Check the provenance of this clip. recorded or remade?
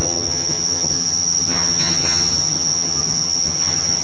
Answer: remade